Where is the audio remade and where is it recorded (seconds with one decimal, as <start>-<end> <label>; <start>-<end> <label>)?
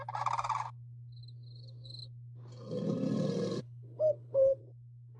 0.0-3.6 recorded; 3.6-4.6 remade; 4.6-5.2 recorded